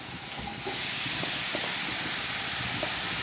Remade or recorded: recorded